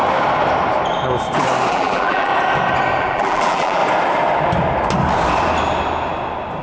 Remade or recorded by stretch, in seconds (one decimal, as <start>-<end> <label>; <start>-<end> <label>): 0.0-1.7 recorded; 1.7-2.3 remade; 2.3-3.0 recorded; 3.0-3.8 remade; 3.8-6.6 recorded